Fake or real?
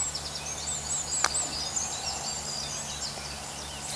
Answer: real